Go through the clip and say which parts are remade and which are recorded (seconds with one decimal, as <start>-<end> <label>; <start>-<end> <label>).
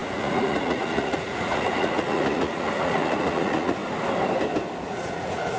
0.0-3.8 remade; 3.8-4.8 recorded; 4.8-5.6 remade